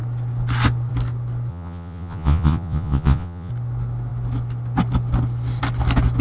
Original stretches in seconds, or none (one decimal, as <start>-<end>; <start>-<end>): 0.0-1.5; 3.5-6.2